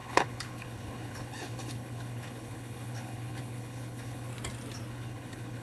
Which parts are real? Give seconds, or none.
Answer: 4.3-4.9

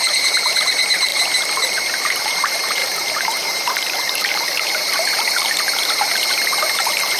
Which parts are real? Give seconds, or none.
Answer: none